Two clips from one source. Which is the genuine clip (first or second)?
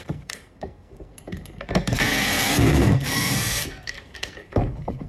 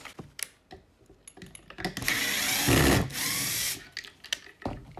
second